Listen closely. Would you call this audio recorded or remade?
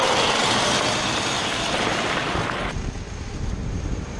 recorded